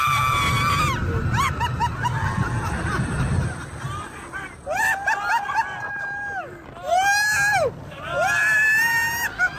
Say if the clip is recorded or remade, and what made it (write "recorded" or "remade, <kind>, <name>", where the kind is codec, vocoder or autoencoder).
recorded